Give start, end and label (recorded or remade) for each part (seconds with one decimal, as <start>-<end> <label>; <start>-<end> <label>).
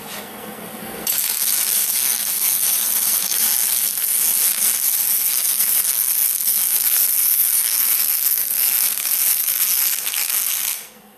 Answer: 0.0-11.2 remade